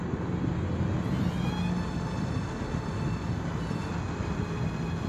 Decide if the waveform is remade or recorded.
recorded